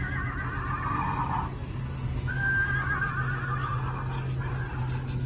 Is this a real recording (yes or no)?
yes